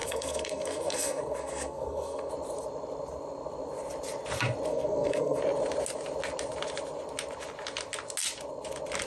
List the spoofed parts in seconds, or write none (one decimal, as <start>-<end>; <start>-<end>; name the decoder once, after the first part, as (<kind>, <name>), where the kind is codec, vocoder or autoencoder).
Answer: 0.0-2.3 (codec, SNAC); 4.7-5.4